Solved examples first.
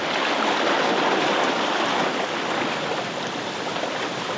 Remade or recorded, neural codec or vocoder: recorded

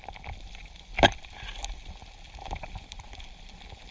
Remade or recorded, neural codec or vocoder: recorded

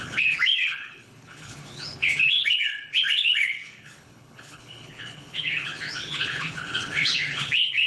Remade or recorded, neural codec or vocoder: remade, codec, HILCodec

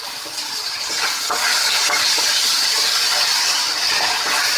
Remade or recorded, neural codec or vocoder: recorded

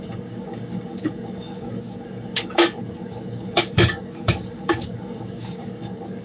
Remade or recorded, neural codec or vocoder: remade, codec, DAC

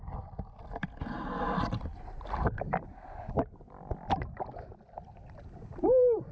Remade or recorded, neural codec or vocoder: recorded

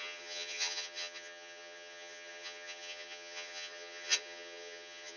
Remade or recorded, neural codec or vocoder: remade, vocoder, HiFi-GAN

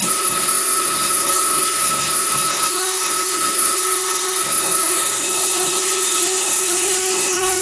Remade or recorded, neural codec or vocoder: remade, codec, SNAC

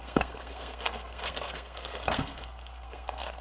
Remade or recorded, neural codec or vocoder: remade, codec, SNAC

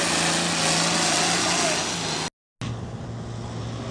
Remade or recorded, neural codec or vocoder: recorded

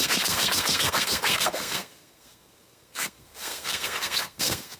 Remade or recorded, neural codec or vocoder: remade, codec, SNAC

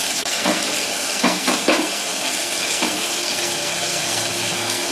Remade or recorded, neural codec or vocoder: remade, codec, SNAC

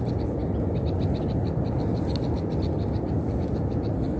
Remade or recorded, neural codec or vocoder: recorded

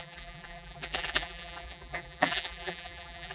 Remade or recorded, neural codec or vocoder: remade, vocoder, BigVGAN v2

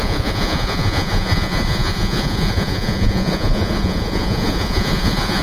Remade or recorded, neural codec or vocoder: remade, vocoder, Vocos